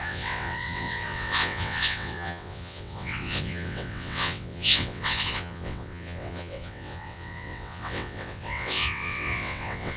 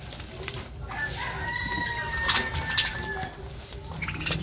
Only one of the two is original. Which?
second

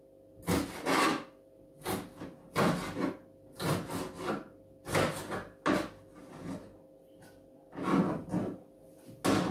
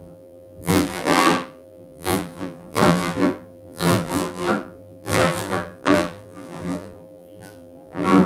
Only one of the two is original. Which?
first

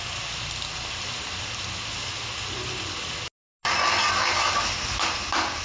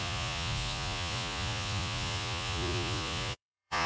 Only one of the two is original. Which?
first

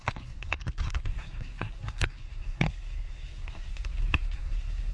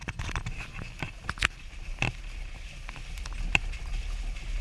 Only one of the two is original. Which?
second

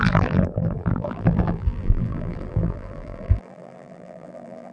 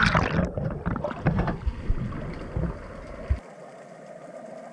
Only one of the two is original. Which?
second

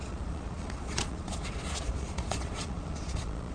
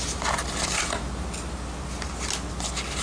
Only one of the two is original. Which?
second